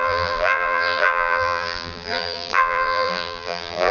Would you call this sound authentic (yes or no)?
no